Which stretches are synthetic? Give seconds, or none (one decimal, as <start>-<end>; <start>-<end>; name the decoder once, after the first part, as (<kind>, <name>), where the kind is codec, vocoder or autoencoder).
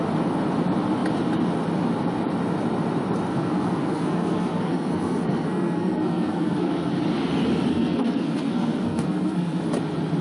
3.3-6.9 (codec, SNAC); 7.7-9.6